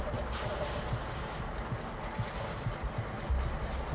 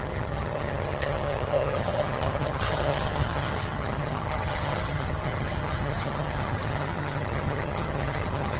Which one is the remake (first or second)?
second